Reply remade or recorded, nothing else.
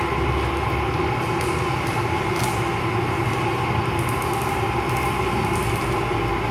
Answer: recorded